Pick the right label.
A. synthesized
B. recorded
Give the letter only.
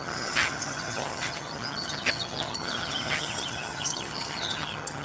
A